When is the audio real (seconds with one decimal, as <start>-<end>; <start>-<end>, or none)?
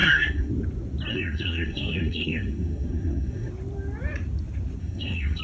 0.5-1.1; 3.5-4.8